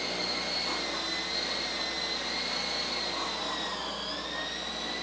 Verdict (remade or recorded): recorded